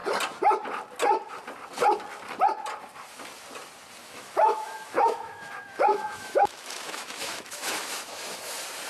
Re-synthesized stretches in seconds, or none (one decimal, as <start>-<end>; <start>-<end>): 4.0-8.4